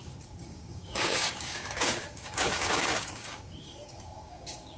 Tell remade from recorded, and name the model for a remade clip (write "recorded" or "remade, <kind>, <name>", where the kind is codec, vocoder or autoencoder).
remade, codec, DAC